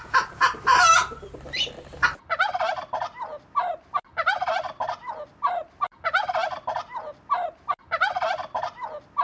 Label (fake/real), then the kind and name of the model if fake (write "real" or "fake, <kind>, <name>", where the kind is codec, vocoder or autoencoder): real